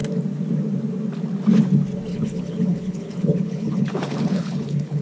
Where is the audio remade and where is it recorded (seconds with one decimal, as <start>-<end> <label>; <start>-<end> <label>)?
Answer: 0.0-2.1 recorded; 2.1-5.0 remade